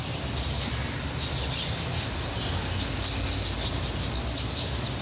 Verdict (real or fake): real